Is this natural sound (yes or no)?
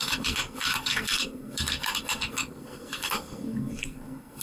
no